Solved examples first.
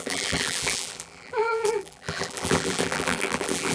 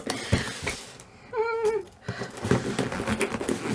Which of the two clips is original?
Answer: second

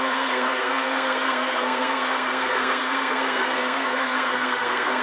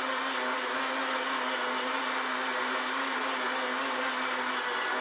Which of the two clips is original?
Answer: second